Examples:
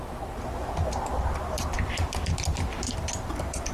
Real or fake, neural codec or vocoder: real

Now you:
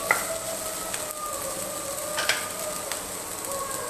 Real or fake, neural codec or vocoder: real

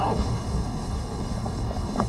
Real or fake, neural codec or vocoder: fake, codec, HILCodec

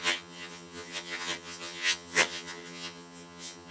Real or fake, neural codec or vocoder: fake, vocoder, HiFi-GAN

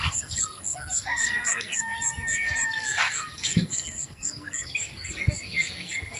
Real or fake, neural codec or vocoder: fake, codec, SNAC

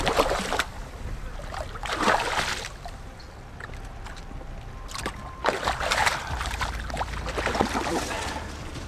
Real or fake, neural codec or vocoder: fake, vocoder, BigVGAN v2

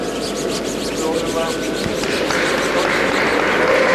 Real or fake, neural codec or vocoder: real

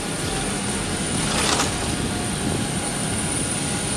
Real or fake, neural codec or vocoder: real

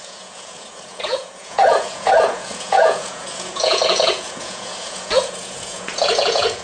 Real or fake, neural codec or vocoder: fake, vocoder, Vocos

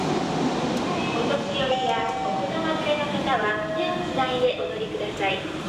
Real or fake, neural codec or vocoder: real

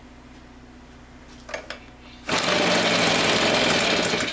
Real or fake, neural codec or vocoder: real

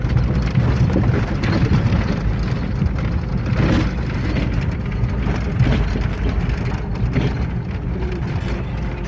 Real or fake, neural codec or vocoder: real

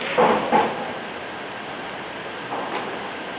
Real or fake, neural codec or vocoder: real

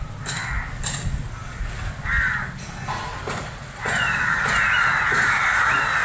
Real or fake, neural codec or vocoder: real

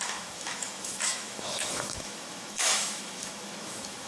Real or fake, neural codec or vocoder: fake, autoencoder, DAC-VAE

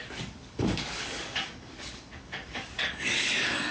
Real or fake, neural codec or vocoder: fake, codec, DAC